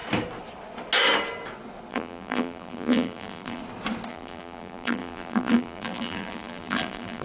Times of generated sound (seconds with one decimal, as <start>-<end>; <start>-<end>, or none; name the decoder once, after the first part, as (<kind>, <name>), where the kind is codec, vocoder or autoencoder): 1.9-3.6 (vocoder, BigVGAN v2); 4.1-7.2